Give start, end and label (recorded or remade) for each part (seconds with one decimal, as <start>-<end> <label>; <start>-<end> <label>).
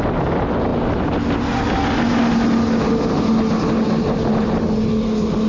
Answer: 0.0-5.5 recorded